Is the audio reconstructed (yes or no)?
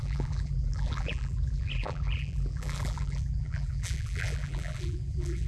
yes